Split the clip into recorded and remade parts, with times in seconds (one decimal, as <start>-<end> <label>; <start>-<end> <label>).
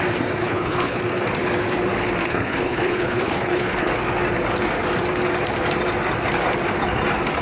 0.0-0.4 recorded; 0.4-1.0 remade; 1.0-2.2 recorded; 2.2-3.9 remade; 3.9-7.4 recorded